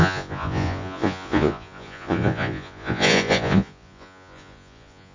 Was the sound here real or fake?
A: fake